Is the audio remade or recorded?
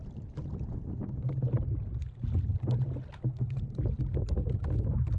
recorded